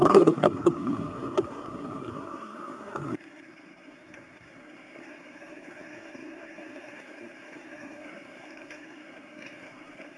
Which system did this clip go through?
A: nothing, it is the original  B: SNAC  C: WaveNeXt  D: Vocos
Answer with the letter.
B